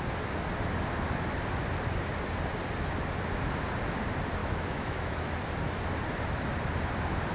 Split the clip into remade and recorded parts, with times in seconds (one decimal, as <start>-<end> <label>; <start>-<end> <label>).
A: 0.0-4.4 recorded; 4.4-5.3 remade; 5.3-7.3 recorded